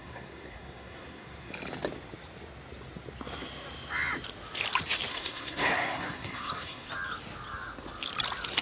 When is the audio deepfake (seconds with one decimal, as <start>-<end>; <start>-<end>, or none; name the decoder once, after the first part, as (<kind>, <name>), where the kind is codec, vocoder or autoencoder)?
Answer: 0.0-1.5 (codec, SNAC); 5.1-6.9